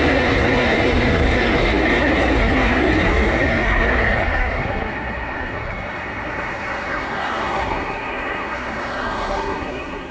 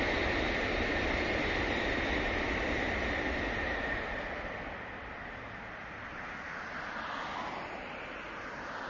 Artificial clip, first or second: first